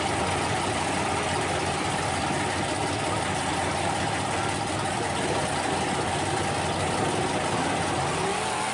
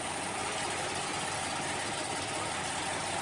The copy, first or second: second